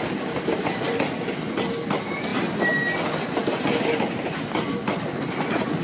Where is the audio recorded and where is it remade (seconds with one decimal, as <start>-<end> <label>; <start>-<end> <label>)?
0.0-5.8 recorded

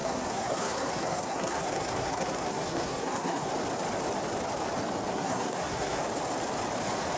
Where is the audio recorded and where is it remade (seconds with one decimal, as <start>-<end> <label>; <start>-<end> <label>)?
0.0-3.5 remade; 3.5-5.1 recorded; 5.1-6.0 remade; 6.0-7.2 recorded

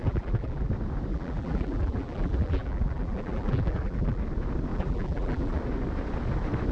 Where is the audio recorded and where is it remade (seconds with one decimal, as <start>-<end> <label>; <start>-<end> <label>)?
0.0-0.7 remade; 0.7-1.1 recorded; 1.1-4.2 remade; 4.2-4.7 recorded; 4.7-5.6 remade; 5.6-6.7 recorded

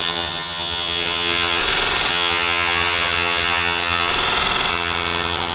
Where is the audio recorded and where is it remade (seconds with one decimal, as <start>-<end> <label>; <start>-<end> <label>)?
0.0-1.6 remade; 1.6-2.1 recorded; 2.1-4.1 remade; 4.1-4.7 recorded; 4.7-5.5 remade

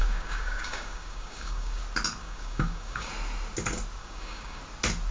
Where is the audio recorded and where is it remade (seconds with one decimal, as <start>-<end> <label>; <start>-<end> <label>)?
0.0-1.8 remade; 1.8-2.2 recorded; 2.2-3.1 remade; 3.1-4.0 recorded; 4.0-4.6 remade; 4.6-5.1 recorded

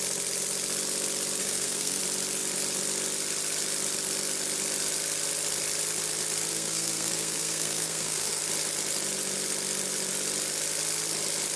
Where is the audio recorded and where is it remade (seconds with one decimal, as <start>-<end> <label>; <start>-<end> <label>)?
0.0-1.4 recorded; 1.4-2.0 remade; 2.0-6.5 recorded; 6.5-8.4 remade; 8.4-11.6 recorded

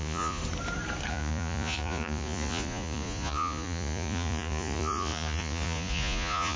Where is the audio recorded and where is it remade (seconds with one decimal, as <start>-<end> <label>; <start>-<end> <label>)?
0.0-0.4 remade; 0.4-1.1 recorded; 1.1-6.6 remade